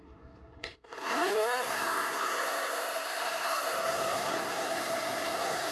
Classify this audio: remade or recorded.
remade